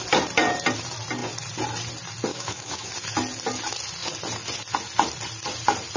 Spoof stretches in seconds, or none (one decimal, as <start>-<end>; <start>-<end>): 2.3-2.9